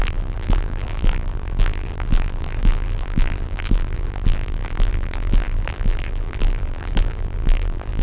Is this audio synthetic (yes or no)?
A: yes